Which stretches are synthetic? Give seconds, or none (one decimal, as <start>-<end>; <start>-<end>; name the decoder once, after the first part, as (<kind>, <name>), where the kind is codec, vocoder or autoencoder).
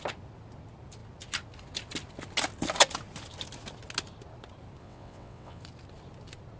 4.8-5.6 (vocoder, WaveNeXt)